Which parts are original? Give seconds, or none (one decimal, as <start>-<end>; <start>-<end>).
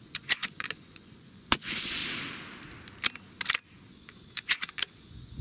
2.0-3.9